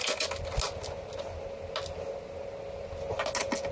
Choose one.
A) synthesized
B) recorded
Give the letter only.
B